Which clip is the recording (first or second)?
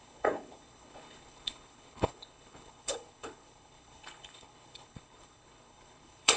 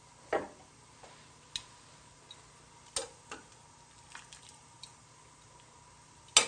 second